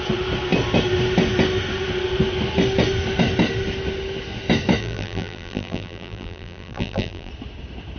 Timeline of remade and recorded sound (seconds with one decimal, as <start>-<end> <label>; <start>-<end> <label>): 0.0-4.8 recorded; 4.8-7.3 remade; 7.3-8.0 recorded